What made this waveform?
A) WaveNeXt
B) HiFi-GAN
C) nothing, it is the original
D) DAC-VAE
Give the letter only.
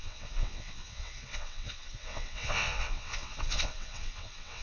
A